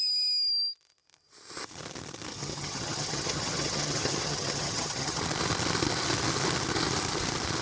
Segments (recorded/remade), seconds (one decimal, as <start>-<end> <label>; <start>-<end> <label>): 0.0-2.3 recorded; 2.3-5.2 remade; 5.2-7.6 recorded